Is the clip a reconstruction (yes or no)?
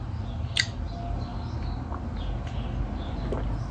no